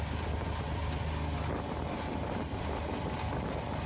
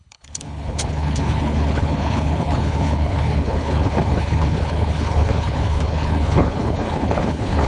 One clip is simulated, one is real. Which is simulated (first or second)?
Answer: second